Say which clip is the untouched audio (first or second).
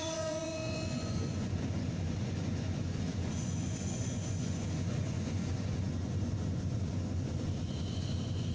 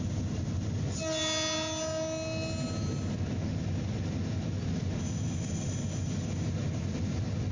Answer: second